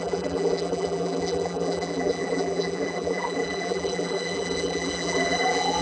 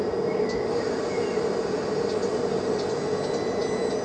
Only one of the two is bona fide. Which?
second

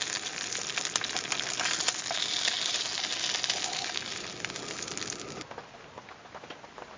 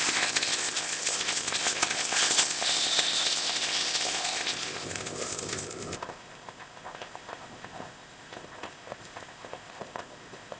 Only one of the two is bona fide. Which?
first